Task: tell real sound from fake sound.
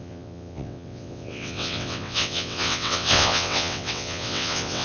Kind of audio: fake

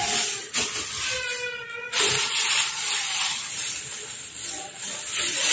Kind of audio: real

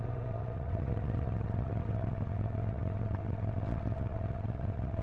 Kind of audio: fake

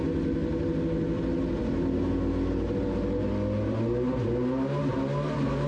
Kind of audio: real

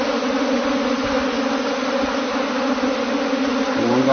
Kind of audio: real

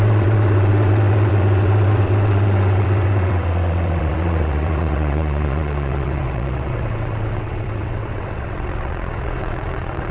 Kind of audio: fake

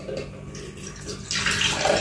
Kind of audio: real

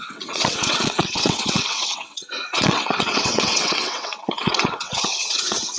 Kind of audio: fake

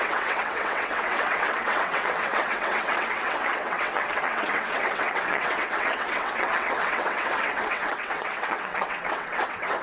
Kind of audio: fake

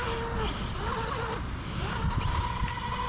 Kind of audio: real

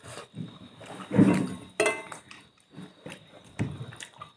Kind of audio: real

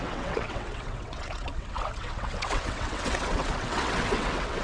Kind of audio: fake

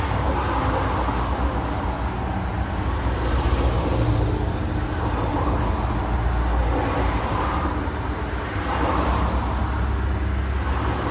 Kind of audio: real